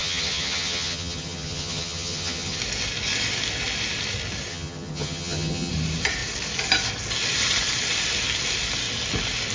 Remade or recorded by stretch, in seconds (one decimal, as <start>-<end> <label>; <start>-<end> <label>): 0.0-2.6 remade; 2.6-4.5 recorded; 4.5-5.7 remade; 5.7-9.5 recorded